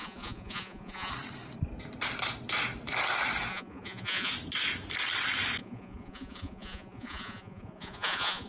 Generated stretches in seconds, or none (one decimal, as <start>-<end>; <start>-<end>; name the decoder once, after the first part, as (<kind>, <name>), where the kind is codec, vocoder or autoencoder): 0.0-1.1 (vocoder, Vocos); 3.5-4.3; 5.6-8.5